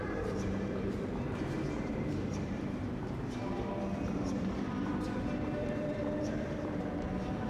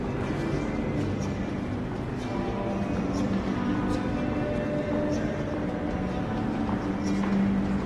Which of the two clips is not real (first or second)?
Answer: first